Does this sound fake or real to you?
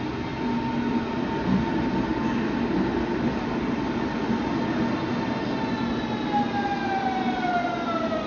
real